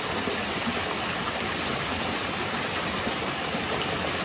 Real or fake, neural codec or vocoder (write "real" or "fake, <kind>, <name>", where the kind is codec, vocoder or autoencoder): real